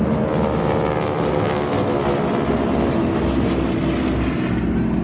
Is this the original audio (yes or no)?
yes